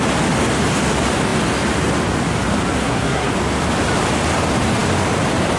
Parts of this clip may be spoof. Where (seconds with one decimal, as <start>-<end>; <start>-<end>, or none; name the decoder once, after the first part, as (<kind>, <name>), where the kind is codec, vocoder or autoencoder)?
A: 2.8-3.3 (codec, SNAC)